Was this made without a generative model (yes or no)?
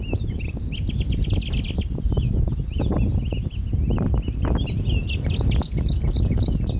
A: yes